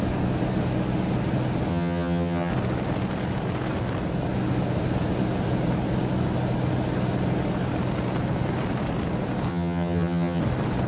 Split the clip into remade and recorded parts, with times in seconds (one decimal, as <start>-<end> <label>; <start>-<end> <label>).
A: 0.0-1.7 recorded; 1.7-2.5 remade; 2.5-9.5 recorded; 9.5-10.4 remade; 10.4-10.9 recorded